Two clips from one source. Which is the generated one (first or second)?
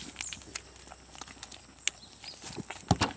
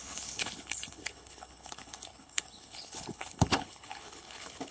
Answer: second